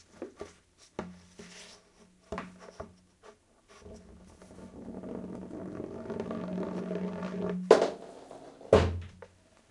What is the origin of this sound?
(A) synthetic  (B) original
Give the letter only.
B